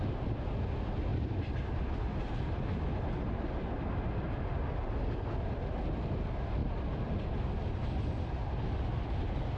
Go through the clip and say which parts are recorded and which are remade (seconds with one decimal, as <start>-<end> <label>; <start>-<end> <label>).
0.0-9.6 recorded